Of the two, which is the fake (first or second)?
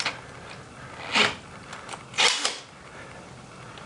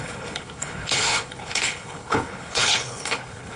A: second